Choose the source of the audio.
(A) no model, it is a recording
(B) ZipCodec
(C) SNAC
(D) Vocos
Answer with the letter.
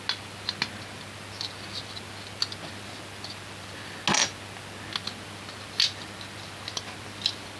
A